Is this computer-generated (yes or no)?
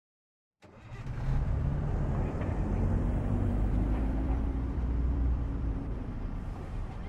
yes